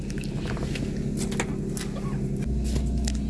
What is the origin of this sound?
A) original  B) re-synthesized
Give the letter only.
A